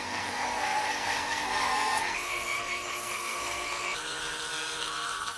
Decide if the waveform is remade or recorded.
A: remade